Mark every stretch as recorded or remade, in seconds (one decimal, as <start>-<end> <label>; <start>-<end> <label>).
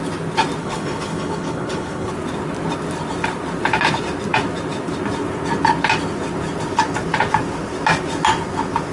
0.0-0.6 recorded; 0.6-2.1 remade; 2.1-8.9 recorded